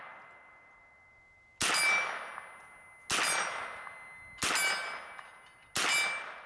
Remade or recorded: recorded